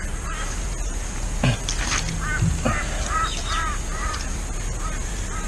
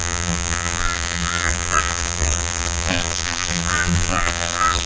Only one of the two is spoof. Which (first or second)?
second